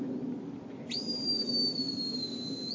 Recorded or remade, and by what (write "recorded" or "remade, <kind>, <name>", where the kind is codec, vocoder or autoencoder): recorded